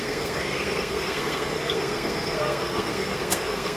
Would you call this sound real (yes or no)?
no